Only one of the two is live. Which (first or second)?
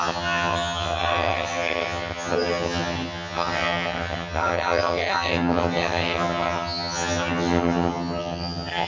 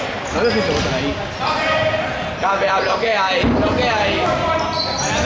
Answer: second